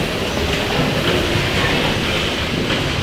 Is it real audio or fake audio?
real